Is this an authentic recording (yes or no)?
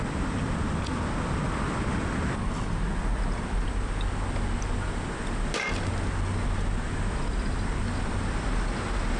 yes